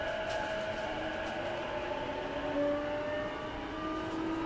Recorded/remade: recorded